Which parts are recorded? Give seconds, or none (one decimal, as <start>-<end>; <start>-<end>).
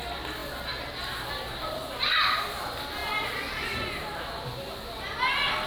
0.0-5.7